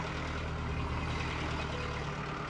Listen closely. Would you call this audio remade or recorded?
recorded